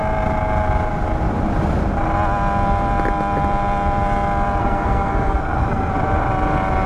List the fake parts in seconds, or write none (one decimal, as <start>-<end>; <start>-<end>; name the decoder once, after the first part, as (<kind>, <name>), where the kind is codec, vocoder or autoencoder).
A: 4.6-5.9 (codec, SNAC)